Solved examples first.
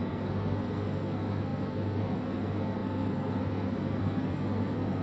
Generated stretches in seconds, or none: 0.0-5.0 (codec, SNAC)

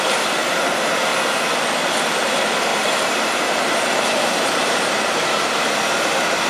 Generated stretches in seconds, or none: 0.0-1.1 (vocoder, BigVGAN v2); 2.0-6.5

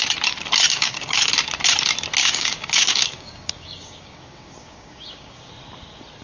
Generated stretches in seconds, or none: 0.7-1.3 (codec, DAC); 2.2-5.5

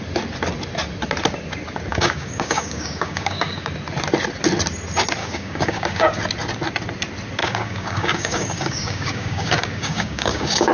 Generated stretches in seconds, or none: 1.9-3.7 (codec, DAC); 5.2-6.2; 7.4-10.7

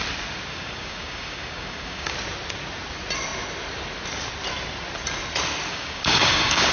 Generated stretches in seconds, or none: 0.5-2.1 (codec, DAC); 5.7-6.7

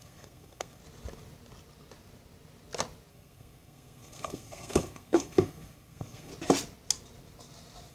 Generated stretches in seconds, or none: 0.0-0.8 (codec, SNAC); 3.1-6.3

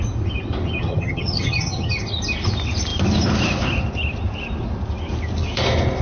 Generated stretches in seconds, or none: 0.8-2.0 (vocoder, HiFi-GAN)